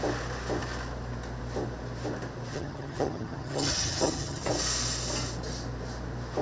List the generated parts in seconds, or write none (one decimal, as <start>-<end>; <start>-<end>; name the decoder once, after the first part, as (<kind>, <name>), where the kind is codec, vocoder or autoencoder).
2.5-4.5 (vocoder, HiFi-GAN)